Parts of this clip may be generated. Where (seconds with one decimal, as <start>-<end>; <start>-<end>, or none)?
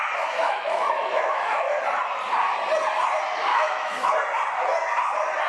0.4-1.8; 3.5-4.1